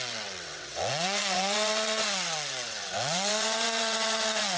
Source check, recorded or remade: remade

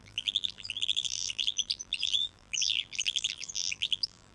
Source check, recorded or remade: remade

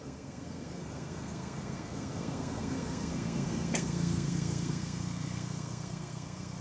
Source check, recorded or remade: remade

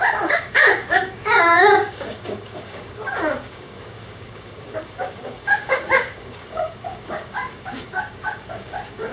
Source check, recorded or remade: remade